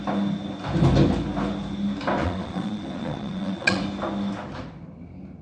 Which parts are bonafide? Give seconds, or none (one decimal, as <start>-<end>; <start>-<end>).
0.0-2.2; 3.8-5.4